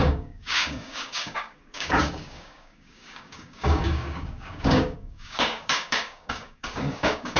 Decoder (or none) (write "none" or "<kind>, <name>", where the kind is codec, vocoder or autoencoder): codec, DAC